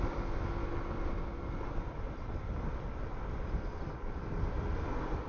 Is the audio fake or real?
real